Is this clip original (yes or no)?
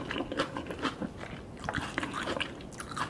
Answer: yes